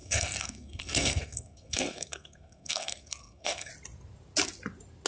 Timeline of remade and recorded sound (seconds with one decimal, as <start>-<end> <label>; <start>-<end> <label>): 0.0-3.7 remade; 3.7-5.1 recorded